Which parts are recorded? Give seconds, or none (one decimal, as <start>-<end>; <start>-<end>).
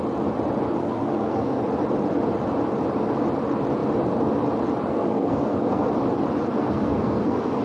0.0-0.8; 1.6-4.9; 5.9-6.6